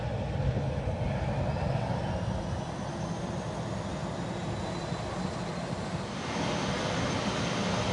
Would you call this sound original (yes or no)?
yes